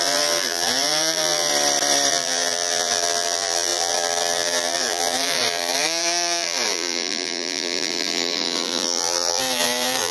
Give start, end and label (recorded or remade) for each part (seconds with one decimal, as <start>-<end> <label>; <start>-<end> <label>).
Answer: 0.0-1.5 remade; 1.5-2.1 recorded; 2.1-10.1 remade